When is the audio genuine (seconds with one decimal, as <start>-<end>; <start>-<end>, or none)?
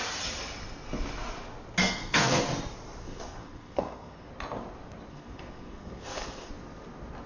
0.0-1.8; 2.4-3.0; 4.3-5.1; 6.5-7.3